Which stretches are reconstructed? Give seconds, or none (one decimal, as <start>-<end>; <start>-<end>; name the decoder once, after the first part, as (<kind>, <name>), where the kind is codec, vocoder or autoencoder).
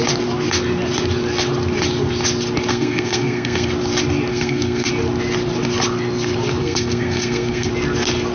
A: 2.7-3.7 (codec, SNAC); 4.3-4.9; 6.6-7.7